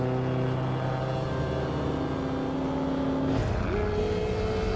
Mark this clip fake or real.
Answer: real